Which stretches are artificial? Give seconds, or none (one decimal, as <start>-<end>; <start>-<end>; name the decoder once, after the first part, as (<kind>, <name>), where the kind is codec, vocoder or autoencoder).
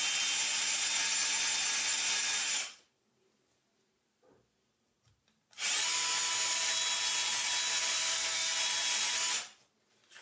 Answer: 8.0-8.6 (codec, SNAC)